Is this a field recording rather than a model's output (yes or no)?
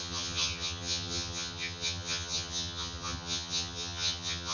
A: no